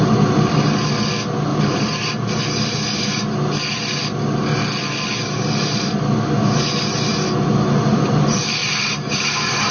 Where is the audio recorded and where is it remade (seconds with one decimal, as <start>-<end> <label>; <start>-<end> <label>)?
0.0-1.5 recorded; 1.5-2.4 remade; 2.4-8.6 recorded; 8.6-9.7 remade